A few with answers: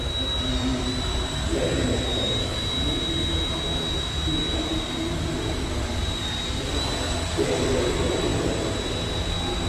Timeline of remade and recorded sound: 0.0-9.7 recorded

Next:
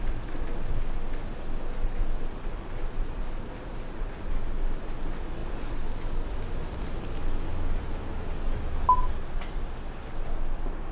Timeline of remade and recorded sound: 0.0-10.9 recorded

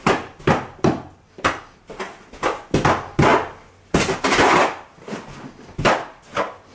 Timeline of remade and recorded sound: 0.0-6.7 recorded